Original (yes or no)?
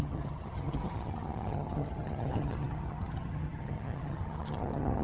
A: no